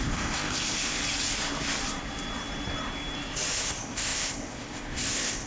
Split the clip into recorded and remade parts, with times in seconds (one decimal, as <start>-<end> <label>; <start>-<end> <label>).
0.0-1.0 remade; 1.0-3.5 recorded; 3.5-5.5 remade